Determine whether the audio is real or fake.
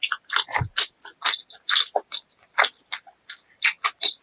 real